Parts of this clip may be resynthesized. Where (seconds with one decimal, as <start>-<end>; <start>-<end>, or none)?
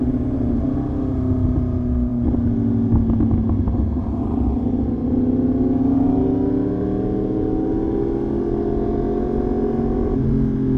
none